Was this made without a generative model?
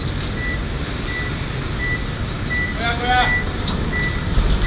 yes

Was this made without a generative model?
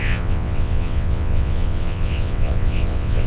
no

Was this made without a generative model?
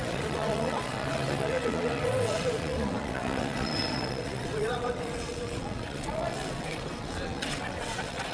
no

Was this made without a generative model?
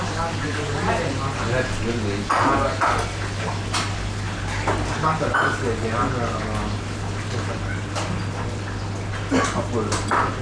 yes